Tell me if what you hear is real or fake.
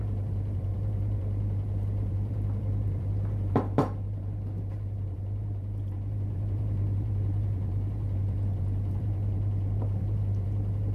fake